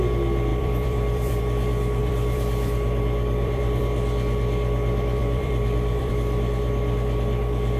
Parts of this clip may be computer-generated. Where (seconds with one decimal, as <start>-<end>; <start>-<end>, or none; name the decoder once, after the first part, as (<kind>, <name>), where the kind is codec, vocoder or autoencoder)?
0.5-1.4 (vocoder, BigVGAN v2); 2.0-3.8; 5.2-6.1